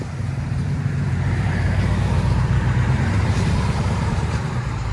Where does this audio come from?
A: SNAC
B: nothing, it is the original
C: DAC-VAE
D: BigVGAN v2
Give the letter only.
D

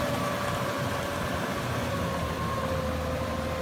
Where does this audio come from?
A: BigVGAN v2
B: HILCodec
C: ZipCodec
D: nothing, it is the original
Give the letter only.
D